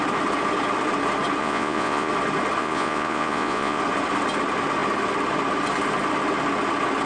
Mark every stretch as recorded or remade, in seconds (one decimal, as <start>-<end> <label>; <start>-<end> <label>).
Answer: 0.0-1.4 recorded; 1.4-2.1 remade; 2.1-2.6 recorded; 2.6-3.8 remade; 3.8-7.1 recorded